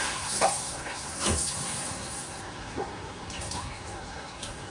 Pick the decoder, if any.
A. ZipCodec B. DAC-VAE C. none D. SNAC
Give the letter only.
D